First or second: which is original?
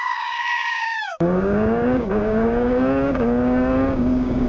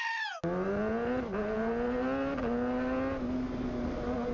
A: second